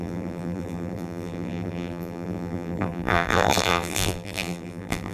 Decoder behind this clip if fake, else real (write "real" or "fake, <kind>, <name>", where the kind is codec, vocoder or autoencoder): fake, vocoder, BigVGAN v2